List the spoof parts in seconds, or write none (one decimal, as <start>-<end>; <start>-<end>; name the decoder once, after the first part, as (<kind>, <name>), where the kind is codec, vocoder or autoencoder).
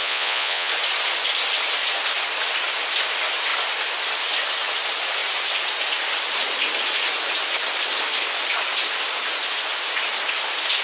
0.0-0.7 (vocoder, Vocos)